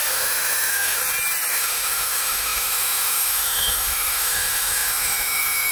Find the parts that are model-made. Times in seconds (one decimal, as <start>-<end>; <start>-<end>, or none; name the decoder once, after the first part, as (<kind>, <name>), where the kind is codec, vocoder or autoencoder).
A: 0.0-1.0 (autoencoder, DAC-VAE); 1.5-5.7